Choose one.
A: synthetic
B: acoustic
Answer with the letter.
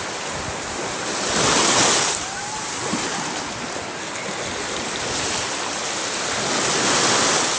B